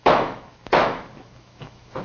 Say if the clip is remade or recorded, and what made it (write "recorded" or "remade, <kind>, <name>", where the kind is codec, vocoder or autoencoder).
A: remade, autoencoder, DAC-VAE